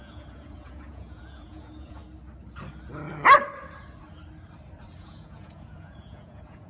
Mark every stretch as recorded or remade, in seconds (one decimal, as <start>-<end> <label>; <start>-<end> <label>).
0.0-2.0 remade; 2.0-5.0 recorded; 5.0-6.7 remade